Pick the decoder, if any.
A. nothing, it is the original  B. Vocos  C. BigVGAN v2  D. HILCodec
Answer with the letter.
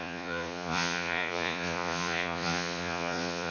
B